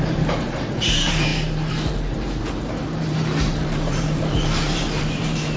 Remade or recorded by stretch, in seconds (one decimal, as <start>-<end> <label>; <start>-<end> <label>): 0.0-5.6 remade